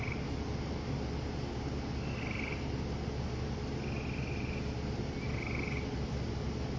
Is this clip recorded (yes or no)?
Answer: yes